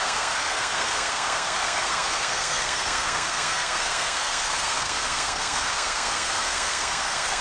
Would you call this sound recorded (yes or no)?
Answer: no